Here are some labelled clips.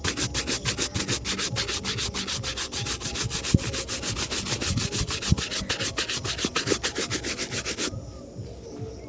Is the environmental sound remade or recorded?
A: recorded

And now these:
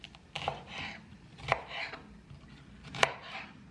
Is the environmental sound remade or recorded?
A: recorded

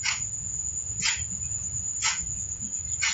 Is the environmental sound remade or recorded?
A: remade